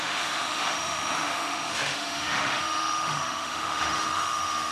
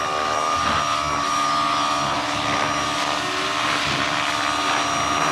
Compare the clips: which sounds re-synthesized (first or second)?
first